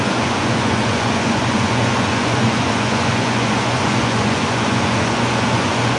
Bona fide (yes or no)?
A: no